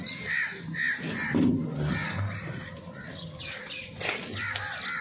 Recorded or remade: recorded